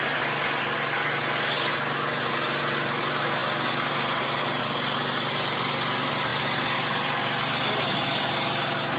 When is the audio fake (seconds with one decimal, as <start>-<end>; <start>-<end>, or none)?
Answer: none